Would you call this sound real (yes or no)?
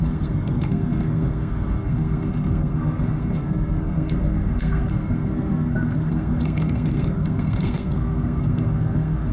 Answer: no